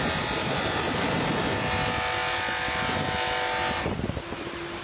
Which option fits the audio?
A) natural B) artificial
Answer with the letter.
A